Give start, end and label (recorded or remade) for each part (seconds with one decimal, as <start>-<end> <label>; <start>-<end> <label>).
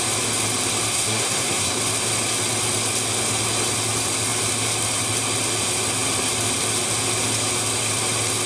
0.0-0.9 recorded; 0.9-1.8 remade; 1.8-8.5 recorded